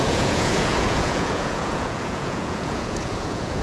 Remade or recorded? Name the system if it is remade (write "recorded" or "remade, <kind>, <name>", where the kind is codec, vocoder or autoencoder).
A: remade, vocoder, Vocos